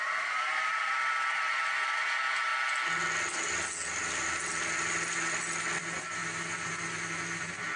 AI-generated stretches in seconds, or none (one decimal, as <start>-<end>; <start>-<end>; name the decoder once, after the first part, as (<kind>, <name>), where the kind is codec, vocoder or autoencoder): none